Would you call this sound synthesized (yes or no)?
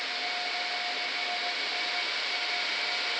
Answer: no